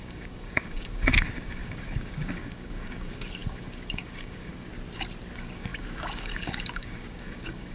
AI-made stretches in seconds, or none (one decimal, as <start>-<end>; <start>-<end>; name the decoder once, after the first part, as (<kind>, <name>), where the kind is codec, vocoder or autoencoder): 0.0-4.7 (codec, DAC); 5.3-7.7